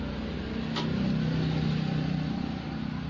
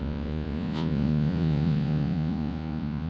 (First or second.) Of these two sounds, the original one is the first